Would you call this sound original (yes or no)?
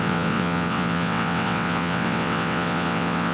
no